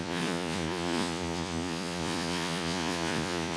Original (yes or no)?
no